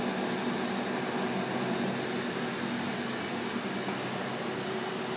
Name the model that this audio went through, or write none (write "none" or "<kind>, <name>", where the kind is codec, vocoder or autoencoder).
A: none